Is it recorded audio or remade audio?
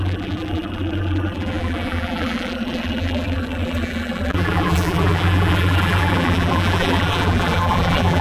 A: remade